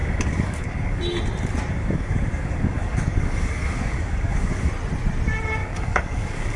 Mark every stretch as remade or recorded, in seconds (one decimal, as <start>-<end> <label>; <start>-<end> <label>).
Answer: 0.0-1.0 remade; 1.0-1.7 recorded; 1.7-4.7 remade; 4.7-5.6 recorded; 5.6-6.6 remade